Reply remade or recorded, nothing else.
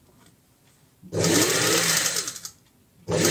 recorded